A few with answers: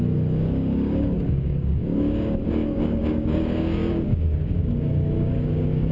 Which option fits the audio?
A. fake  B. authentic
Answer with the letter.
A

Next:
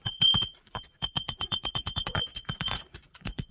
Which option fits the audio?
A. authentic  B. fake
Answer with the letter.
B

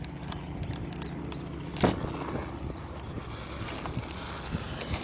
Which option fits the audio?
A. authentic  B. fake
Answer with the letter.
A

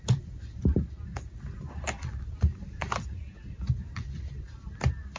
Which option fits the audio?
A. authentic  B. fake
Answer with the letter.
B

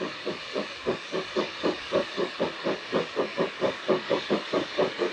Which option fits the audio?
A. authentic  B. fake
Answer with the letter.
B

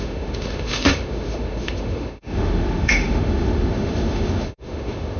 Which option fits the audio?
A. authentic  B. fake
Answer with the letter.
B